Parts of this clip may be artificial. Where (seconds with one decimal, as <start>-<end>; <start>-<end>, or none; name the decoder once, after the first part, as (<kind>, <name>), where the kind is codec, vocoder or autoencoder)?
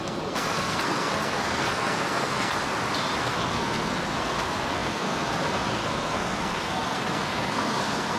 0.0-2.6 (codec, SNAC); 3.2-8.2